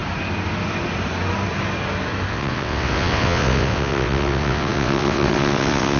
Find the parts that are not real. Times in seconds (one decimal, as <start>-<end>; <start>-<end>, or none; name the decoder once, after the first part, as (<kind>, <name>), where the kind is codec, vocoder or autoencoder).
2.3-6.0 (vocoder, WaveNeXt)